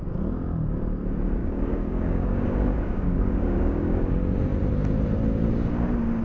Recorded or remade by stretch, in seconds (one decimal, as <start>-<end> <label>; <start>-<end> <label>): 0.0-1.4 recorded; 1.4-4.1 remade; 4.1-6.2 recorded

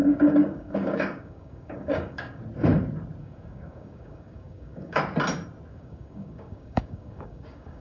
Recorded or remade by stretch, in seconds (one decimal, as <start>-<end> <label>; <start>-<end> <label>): 0.0-2.4 remade; 2.4-3.2 recorded; 3.2-5.0 remade; 5.0-5.7 recorded; 5.7-7.8 remade

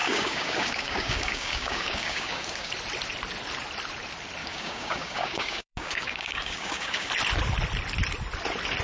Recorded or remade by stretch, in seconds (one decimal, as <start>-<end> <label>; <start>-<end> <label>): 0.0-2.7 remade; 2.7-4.4 recorded; 4.4-7.1 remade; 7.1-8.8 recorded